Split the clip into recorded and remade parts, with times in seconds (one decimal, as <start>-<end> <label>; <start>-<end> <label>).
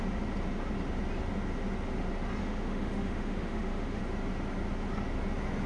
0.0-2.4 recorded; 2.4-4.0 remade; 4.0-5.7 recorded